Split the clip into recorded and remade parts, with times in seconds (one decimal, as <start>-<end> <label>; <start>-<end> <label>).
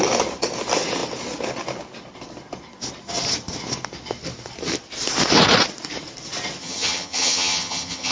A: 0.0-6.6 recorded; 6.6-8.1 remade